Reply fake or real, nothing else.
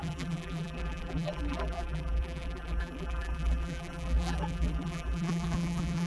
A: fake